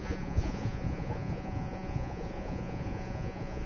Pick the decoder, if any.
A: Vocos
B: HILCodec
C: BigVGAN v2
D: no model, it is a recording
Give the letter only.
A